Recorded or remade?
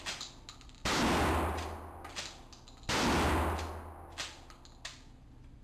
recorded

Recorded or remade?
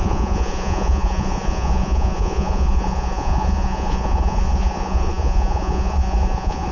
remade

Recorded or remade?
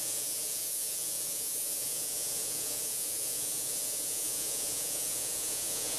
remade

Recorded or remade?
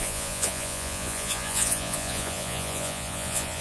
remade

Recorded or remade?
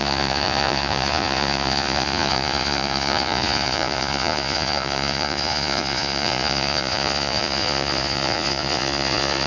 remade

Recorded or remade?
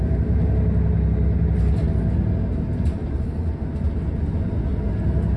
recorded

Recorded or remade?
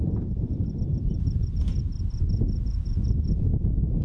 recorded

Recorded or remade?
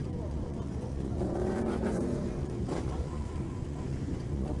remade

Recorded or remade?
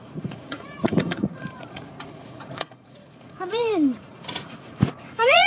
remade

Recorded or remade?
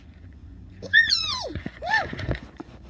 remade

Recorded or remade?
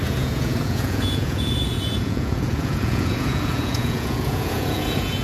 remade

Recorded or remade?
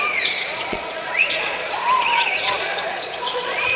remade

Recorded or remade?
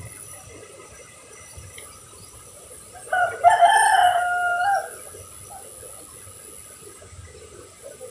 recorded